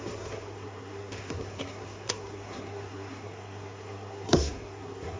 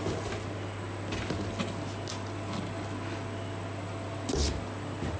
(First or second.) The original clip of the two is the second